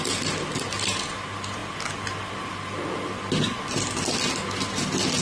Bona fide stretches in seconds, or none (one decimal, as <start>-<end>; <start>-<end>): 0.0-5.2